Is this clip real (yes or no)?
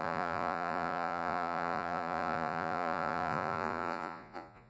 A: no